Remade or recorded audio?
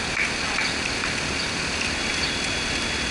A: recorded